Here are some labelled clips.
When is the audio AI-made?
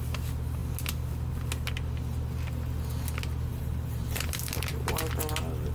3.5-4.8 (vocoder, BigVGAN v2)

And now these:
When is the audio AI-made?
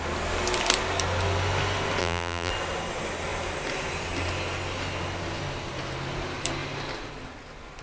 2.0-2.5 (vocoder, BigVGAN v2)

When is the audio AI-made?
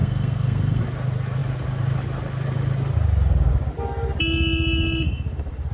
0.0-0.8 (codec, SNAC)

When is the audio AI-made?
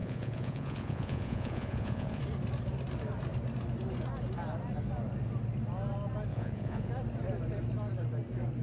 0.0-2.2 (vocoder, Vocos); 6.3-6.9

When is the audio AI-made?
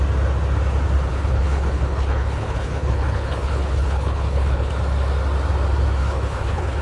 1.1-4.7 (codec, HILCodec); 6.0-6.8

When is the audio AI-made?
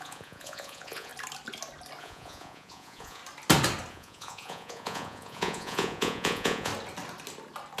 0.0-1.1 (vocoder, Vocos); 2.0-3.2; 3.9-6.7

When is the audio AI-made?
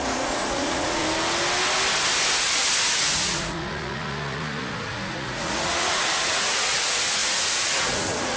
0.0-1.0 (vocoder, Vocos); 2.9-8.4